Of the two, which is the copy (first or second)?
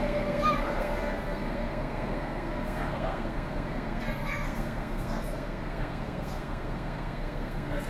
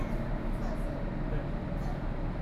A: first